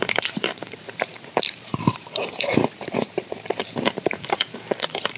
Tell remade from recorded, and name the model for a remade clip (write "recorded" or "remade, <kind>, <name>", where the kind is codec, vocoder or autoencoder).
remade, vocoder, BigVGAN v2